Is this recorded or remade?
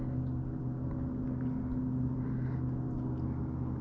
recorded